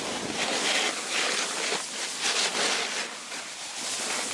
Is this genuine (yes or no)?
yes